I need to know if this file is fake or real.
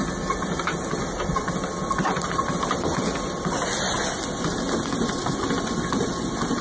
real